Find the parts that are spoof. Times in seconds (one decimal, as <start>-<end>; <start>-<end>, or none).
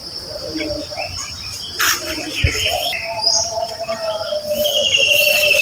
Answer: 0.8-1.5; 2.9-4.8